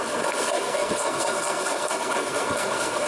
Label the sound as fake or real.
fake